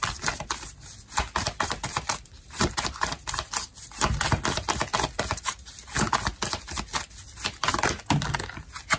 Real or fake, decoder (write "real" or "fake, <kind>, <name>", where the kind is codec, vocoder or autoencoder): real